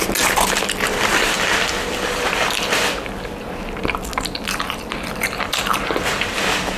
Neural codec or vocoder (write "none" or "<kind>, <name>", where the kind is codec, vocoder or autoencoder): none